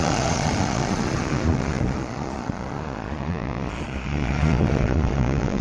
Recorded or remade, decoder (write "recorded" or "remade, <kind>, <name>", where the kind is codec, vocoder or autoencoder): remade, vocoder, Vocos